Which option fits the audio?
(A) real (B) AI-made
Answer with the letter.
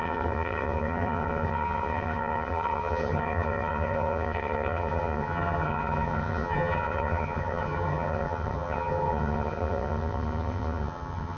B